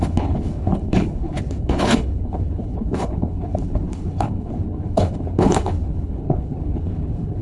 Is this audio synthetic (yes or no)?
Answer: yes